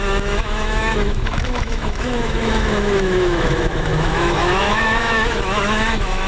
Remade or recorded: remade